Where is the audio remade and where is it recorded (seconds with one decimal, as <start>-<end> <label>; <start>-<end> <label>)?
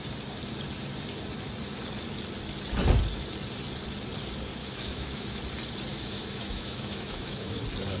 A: 0.0-4.6 recorded; 4.6-5.4 remade; 5.4-5.9 recorded; 5.9-7.6 remade; 7.6-8.0 recorded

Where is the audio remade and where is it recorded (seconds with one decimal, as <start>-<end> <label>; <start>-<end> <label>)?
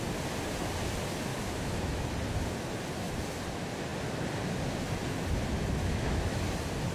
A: 0.0-1.3 recorded; 1.3-2.0 remade; 2.0-5.8 recorded; 5.8-6.4 remade; 6.4-6.9 recorded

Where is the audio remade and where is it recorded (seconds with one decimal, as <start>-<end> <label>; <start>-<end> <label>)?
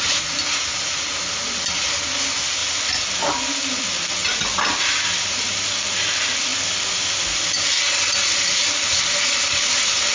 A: 0.0-10.1 recorded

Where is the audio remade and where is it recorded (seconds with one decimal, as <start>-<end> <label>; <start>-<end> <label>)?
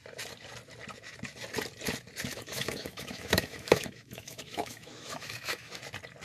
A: 0.0-2.3 recorded; 2.3-5.8 remade; 5.8-6.2 recorded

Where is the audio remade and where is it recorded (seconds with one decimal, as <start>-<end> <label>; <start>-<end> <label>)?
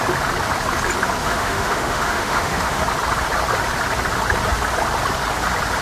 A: 0.0-1.2 recorded; 1.2-2.8 remade; 2.8-5.8 recorded